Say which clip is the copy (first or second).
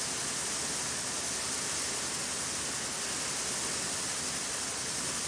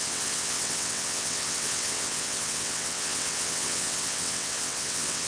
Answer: second